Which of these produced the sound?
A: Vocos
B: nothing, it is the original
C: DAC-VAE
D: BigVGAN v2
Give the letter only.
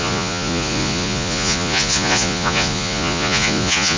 A